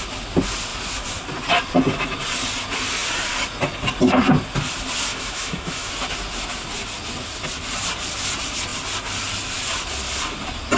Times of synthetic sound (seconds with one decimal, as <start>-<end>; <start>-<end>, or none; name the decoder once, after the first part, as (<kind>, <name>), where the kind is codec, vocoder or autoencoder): 5.1-5.9 (autoencoder, DAC-VAE)